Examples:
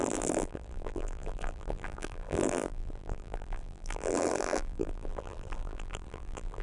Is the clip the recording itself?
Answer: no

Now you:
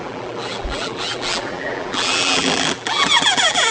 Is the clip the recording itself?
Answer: no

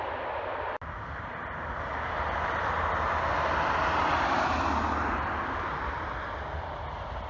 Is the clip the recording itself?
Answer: yes